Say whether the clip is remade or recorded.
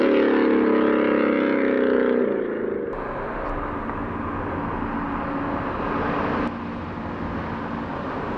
recorded